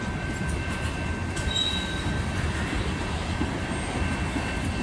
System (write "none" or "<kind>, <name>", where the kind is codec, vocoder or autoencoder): none